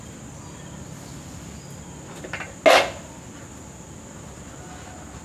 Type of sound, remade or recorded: recorded